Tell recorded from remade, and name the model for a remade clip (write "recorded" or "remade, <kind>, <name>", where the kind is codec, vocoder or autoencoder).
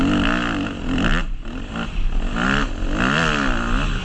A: recorded